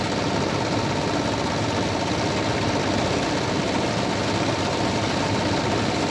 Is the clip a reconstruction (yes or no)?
no